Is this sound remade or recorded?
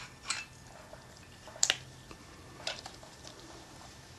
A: recorded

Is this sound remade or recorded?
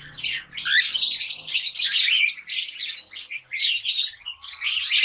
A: recorded